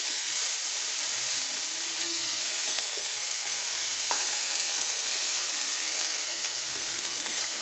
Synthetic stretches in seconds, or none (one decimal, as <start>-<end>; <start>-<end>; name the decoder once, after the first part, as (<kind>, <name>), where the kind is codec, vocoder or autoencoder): 0.0-0.4 (codec, SNAC); 2.0-7.6